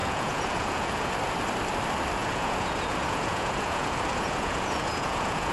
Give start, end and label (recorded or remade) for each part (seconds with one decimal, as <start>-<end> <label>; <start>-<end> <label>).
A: 0.0-1.1 remade; 1.1-2.2 recorded; 2.2-5.5 remade